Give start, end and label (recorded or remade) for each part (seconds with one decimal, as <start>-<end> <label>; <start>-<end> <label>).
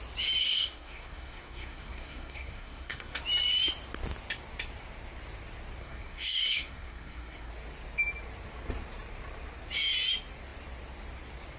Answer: 0.0-0.4 recorded; 0.4-3.2 remade; 3.2-5.8 recorded; 5.8-7.5 remade; 7.5-11.6 recorded